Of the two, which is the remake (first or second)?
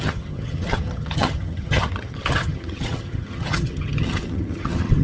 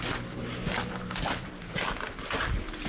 first